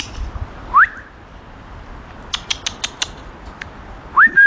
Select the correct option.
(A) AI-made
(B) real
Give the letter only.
B